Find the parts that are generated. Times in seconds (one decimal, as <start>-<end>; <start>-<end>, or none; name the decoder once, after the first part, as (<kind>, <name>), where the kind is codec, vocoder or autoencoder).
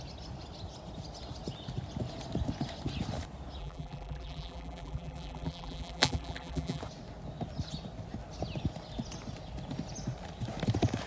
3.6-6.8 (vocoder, BigVGAN v2)